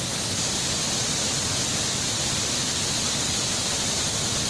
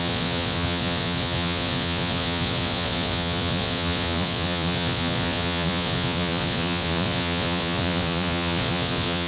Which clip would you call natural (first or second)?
first